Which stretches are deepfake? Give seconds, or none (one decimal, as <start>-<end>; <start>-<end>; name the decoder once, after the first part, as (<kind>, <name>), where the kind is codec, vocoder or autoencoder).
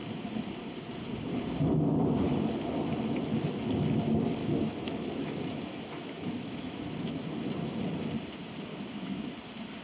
4.4-7.4 (autoencoder, DAC-VAE); 8.7-9.3